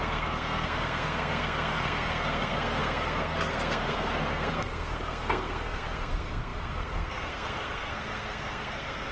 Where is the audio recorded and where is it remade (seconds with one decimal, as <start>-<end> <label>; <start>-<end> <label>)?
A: 0.0-9.1 remade